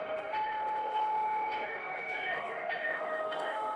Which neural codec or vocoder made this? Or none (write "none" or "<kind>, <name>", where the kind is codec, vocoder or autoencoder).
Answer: autoencoder, DAC-VAE